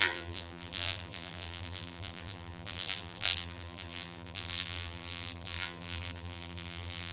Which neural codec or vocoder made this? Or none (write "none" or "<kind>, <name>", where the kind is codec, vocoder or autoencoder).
vocoder, BigVGAN v2